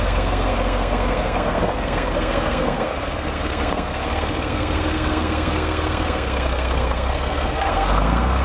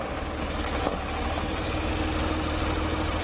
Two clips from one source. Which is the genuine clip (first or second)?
second